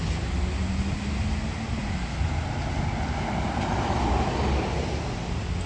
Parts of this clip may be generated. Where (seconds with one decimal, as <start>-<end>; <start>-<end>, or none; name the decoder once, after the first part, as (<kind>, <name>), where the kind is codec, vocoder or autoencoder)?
none